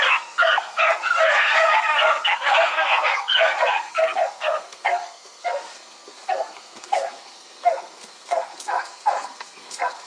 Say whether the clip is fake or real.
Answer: fake